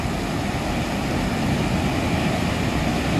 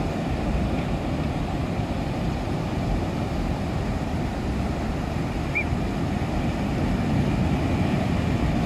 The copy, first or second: second